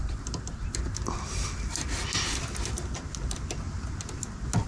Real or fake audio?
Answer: real